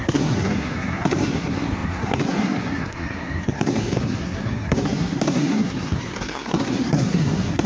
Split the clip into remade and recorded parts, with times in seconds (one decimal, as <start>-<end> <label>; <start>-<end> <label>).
0.0-7.7 remade